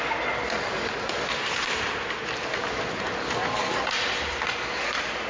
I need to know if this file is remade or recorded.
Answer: recorded